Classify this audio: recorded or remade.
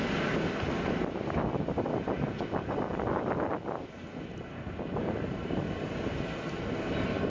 recorded